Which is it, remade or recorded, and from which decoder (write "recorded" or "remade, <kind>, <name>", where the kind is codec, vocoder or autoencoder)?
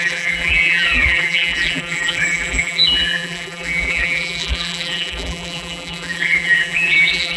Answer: remade, vocoder, BigVGAN v2